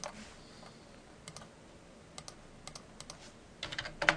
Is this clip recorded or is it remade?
recorded